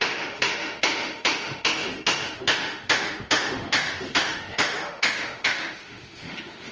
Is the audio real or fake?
fake